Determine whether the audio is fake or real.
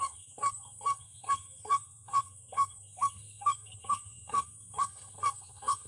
fake